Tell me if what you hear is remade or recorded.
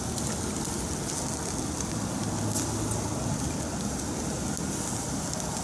recorded